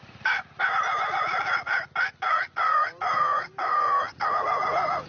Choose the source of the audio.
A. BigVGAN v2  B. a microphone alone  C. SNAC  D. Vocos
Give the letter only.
B